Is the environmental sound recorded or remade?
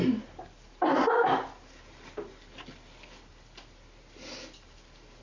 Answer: recorded